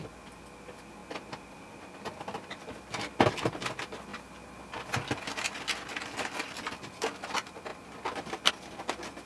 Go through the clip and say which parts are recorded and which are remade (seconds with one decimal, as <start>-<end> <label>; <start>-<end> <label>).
0.0-9.3 recorded